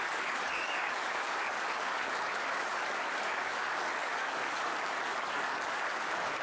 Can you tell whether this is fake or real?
fake